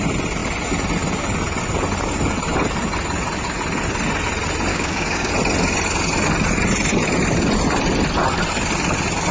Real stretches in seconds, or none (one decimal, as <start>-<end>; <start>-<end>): 0.0-4.7; 5.3-9.3